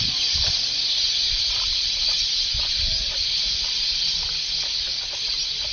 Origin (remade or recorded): recorded